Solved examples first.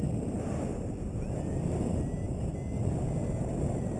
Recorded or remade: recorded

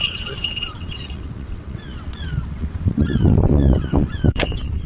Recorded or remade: remade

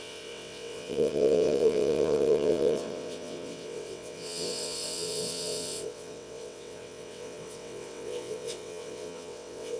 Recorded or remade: remade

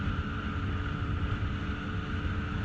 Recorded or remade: recorded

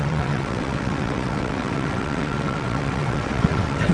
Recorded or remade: remade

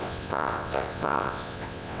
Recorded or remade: remade